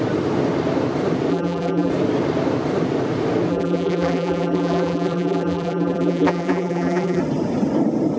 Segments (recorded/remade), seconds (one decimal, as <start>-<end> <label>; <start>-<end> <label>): 0.0-1.3 recorded; 1.3-1.9 remade; 1.9-3.5 recorded; 3.5-7.2 remade; 7.2-8.2 recorded